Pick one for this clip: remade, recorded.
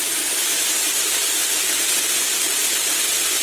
recorded